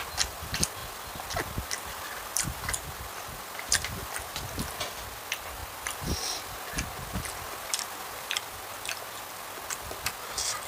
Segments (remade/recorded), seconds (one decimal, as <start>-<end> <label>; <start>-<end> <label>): 0.0-0.8 recorded; 0.8-4.5 remade; 4.5-5.6 recorded; 5.6-9.2 remade; 9.2-10.7 recorded